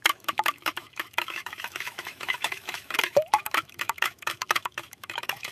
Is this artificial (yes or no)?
yes